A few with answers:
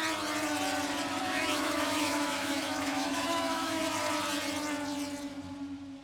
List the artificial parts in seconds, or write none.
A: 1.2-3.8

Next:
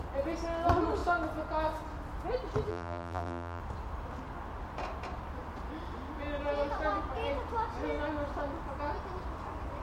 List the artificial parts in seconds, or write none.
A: 2.7-3.6

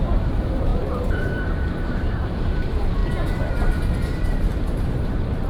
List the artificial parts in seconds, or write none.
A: 0.0-3.0; 4.7-5.5

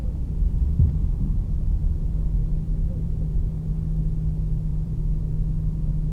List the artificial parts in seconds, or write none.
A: 2.4-3.7; 4.7-5.3

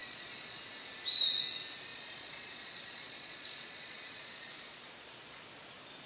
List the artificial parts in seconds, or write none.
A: 0.0-0.6; 1.9-5.4

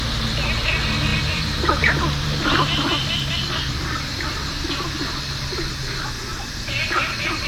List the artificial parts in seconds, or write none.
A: 1.1-5.1; 6.3-7.5

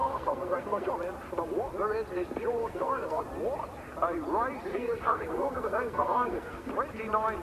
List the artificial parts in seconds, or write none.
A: 0.0-0.9; 2.6-3.2; 4.7-6.7

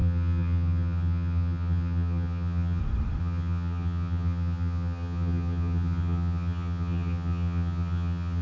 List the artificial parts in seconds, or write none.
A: 0.0-2.8; 3.2-8.4